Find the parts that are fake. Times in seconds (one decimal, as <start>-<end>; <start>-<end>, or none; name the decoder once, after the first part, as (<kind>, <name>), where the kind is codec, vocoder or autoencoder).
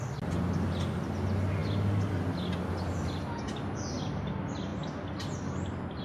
none